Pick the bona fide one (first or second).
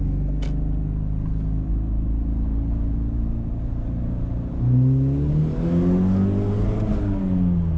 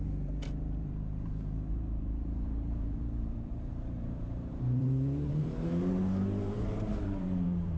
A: first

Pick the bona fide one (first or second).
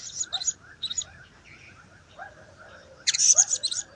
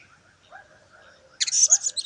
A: second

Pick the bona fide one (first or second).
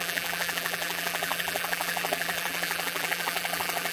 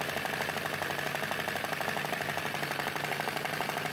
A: second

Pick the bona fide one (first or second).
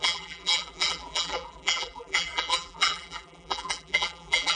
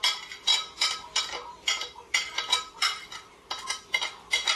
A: second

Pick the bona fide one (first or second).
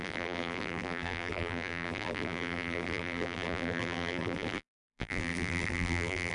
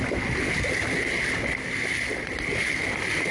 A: second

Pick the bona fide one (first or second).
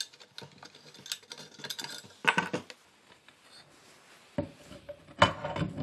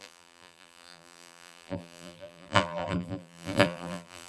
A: first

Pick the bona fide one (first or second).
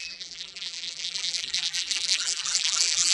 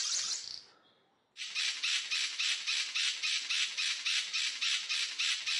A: second